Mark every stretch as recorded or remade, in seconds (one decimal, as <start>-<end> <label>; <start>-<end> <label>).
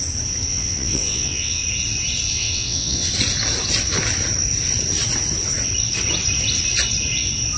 0.0-0.5 recorded; 0.5-1.6 remade; 1.6-2.3 recorded; 2.3-3.1 remade; 3.1-7.6 recorded